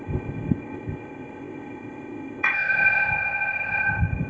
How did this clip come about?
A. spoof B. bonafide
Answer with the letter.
A